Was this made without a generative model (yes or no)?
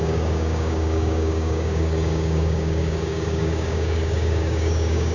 no